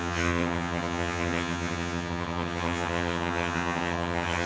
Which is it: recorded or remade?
remade